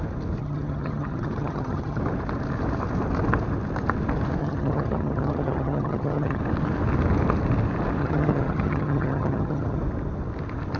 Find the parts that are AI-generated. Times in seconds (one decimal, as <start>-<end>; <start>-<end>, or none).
0.4-2.0; 4.4-6.4; 8.0-9.8